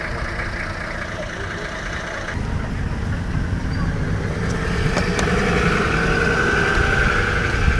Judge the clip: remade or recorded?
recorded